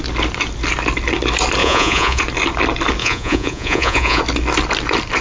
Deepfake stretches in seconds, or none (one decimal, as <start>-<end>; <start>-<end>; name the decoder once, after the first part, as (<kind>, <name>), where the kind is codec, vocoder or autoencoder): 1.6-2.2 (vocoder, Vocos); 3.0-4.2